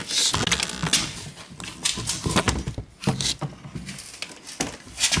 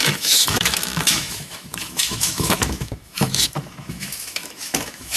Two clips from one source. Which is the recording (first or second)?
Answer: first